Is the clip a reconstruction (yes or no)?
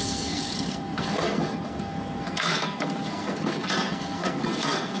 yes